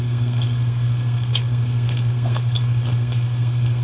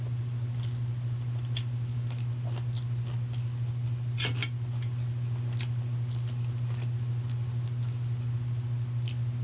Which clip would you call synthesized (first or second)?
first